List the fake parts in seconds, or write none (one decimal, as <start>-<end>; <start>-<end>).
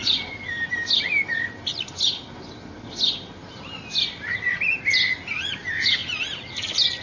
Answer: none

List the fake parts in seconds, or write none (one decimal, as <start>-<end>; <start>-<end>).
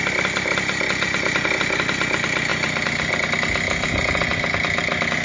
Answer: none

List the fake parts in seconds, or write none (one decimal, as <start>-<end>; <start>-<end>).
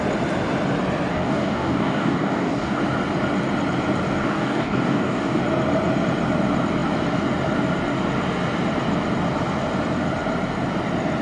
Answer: 1.1-2.8; 4.2-5.4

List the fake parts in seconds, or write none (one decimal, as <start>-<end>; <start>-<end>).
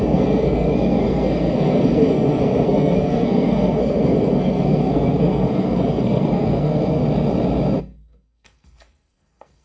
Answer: 0.0-7.0; 7.8-9.6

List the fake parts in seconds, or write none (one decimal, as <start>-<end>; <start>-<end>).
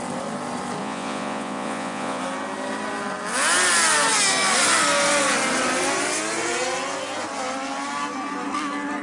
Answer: 0.8-2.2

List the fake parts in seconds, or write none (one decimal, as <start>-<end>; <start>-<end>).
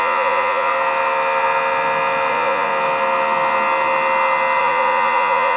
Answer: 0.0-0.7; 2.3-2.7; 4.6-5.6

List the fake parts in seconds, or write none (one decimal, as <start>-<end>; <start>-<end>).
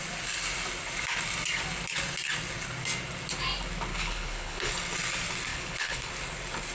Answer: 3.9-4.7; 5.5-6.1